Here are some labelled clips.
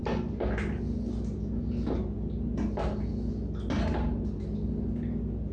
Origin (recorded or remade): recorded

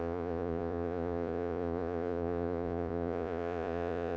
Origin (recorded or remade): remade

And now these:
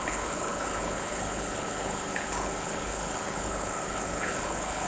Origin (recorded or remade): remade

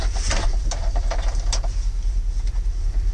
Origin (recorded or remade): recorded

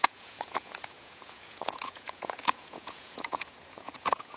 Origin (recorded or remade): remade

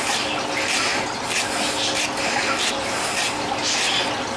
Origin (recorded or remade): recorded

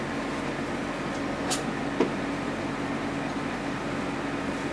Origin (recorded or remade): recorded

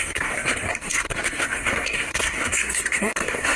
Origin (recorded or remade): remade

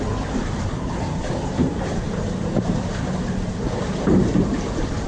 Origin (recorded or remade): remade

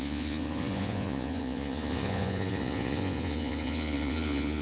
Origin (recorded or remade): remade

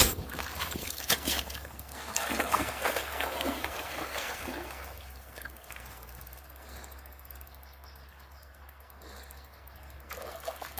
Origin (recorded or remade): remade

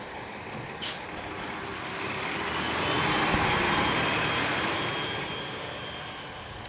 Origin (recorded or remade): recorded